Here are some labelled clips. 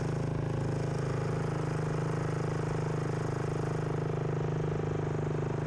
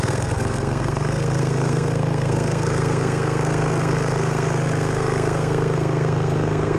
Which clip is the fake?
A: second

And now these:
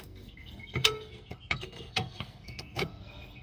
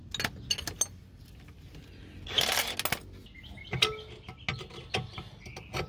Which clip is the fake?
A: first